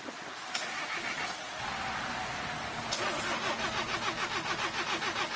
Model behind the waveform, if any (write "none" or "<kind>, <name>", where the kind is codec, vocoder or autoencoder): none